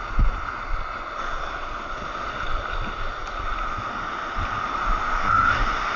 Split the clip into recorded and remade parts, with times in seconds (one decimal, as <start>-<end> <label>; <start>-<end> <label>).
0.0-6.0 recorded